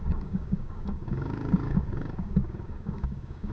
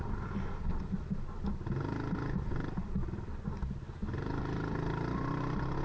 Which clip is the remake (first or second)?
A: first